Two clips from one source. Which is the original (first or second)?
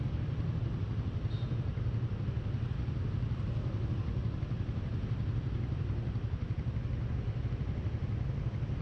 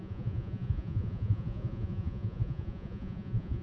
first